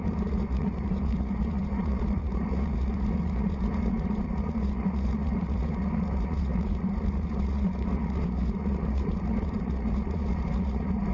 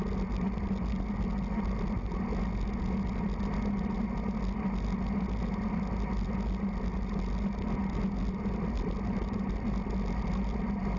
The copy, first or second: first